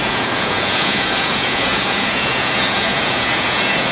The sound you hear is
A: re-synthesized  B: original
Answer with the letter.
A